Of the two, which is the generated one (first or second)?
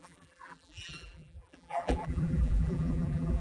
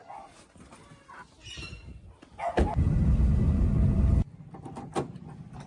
first